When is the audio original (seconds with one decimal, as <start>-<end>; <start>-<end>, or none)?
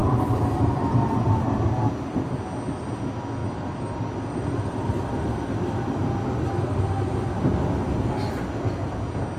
1.1-3.4; 6.8-9.4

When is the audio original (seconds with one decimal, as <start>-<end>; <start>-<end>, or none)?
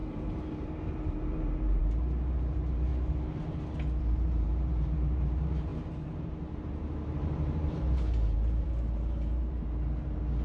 2.9-4.0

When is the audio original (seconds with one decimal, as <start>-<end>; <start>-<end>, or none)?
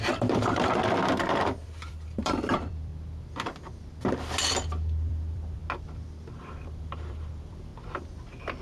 0.8-1.3; 2.9-4.4; 5.6-6.4; 7.7-8.6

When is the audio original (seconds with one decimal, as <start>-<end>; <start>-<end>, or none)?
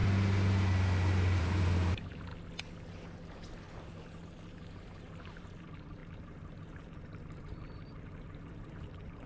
0.0-1.4; 2.3-4.2